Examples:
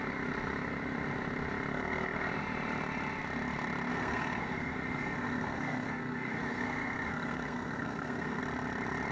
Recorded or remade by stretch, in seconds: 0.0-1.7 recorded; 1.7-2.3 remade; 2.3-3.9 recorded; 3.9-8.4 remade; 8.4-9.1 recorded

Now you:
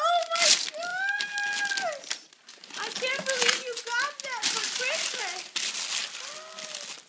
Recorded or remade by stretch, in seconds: 0.0-7.1 recorded

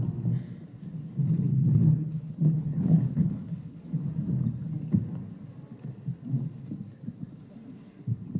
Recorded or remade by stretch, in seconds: 0.0-1.5 recorded; 1.5-3.8 remade; 3.8-8.4 recorded